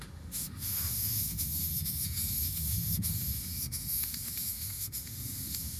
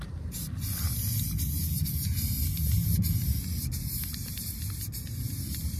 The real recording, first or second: second